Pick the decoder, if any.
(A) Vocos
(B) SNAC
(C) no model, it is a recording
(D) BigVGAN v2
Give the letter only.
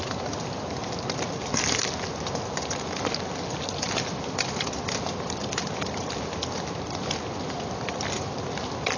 C